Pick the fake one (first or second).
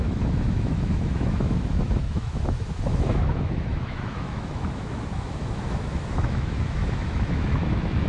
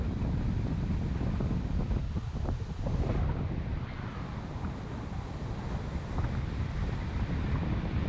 first